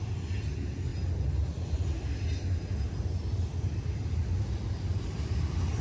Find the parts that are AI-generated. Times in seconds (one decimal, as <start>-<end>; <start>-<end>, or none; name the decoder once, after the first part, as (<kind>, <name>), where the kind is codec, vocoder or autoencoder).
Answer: none